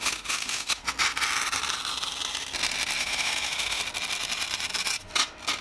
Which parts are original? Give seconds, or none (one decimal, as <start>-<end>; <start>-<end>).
0.8-3.0; 3.8-5.6